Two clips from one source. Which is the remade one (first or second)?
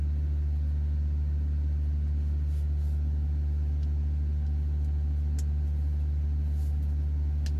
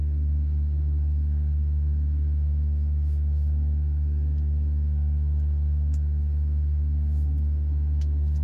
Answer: second